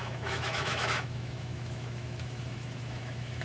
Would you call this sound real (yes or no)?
no